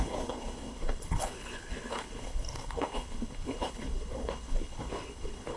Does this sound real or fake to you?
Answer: fake